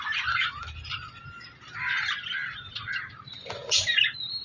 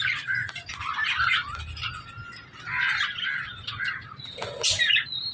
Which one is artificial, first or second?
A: first